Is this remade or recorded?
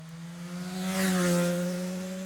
recorded